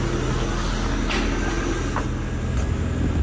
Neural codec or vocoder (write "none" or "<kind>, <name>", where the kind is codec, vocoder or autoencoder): none